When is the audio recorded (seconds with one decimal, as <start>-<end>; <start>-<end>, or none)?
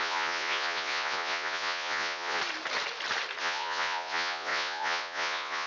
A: 2.4-3.4